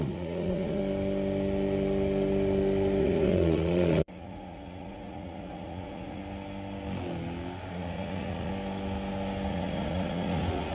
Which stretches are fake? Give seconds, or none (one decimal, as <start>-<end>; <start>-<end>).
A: 0.0-0.8; 3.0-6.2; 7.7-8.5; 9.5-10.7